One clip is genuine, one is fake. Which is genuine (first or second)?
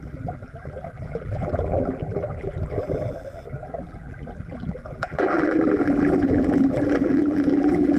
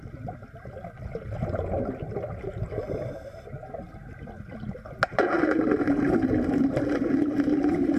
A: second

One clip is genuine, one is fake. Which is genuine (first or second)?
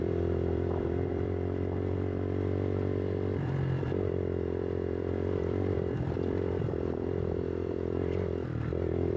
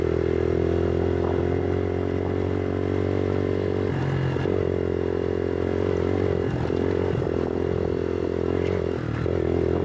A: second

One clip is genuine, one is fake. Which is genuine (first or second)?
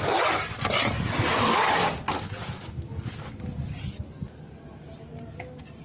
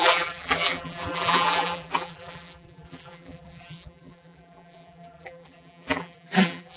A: first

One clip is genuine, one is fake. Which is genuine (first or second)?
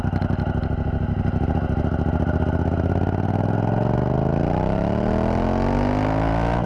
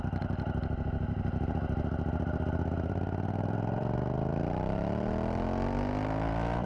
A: first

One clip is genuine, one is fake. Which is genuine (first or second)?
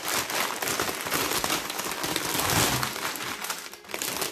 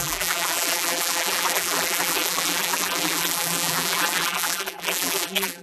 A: first